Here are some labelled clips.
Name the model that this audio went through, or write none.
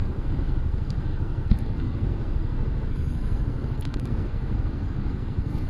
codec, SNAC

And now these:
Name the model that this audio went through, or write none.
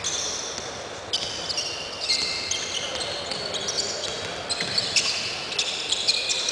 none